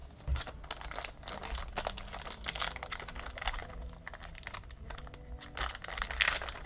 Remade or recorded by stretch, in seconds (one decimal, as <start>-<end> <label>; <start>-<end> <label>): 0.0-6.7 recorded